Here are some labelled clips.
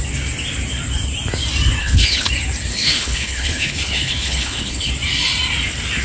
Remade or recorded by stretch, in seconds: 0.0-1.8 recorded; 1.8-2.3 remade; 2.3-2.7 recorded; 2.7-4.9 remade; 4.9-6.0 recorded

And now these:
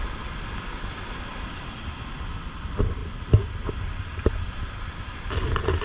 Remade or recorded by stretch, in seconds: 0.0-5.8 recorded

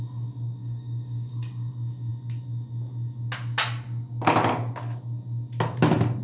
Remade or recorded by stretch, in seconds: 0.0-0.6 recorded; 0.6-1.7 remade; 1.7-6.2 recorded

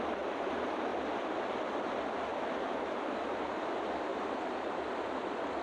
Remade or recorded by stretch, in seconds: 0.0-2.3 recorded; 2.3-3.4 remade; 3.4-4.1 recorded; 4.1-4.7 remade; 4.7-5.6 recorded